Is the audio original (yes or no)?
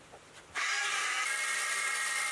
no